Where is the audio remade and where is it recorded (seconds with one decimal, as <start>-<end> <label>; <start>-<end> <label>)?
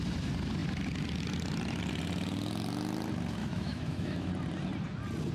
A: 0.0-3.4 recorded; 3.4-4.3 remade; 4.3-5.3 recorded